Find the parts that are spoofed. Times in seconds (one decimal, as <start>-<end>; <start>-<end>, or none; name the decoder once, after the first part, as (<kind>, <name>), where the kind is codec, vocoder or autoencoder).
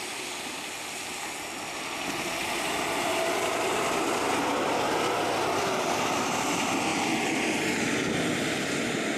none